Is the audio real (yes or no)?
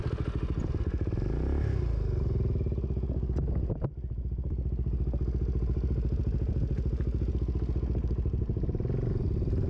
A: yes